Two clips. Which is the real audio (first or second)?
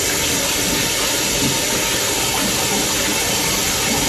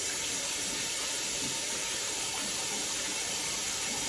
first